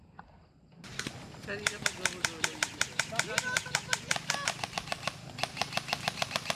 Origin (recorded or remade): recorded